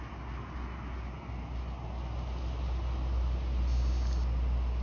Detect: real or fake real